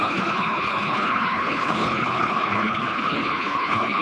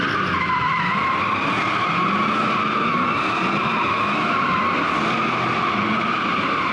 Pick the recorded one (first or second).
second